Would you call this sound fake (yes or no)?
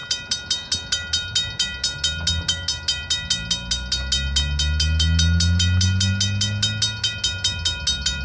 no